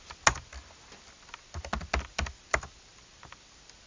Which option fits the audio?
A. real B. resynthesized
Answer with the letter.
A